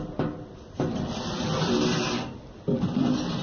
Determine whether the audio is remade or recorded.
recorded